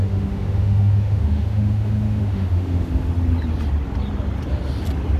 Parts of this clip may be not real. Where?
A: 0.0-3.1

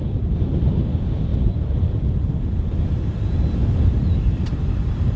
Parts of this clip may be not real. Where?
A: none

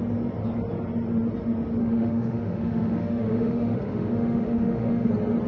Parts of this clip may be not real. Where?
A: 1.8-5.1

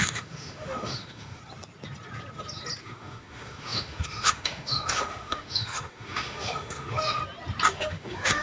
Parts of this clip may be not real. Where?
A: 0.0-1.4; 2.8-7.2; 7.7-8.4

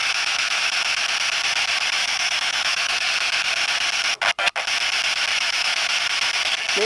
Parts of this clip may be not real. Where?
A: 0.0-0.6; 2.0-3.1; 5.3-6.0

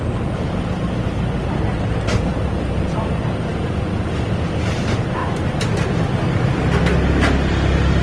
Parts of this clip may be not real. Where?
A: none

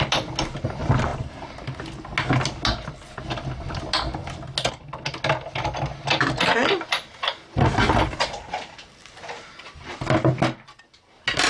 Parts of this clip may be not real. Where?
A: none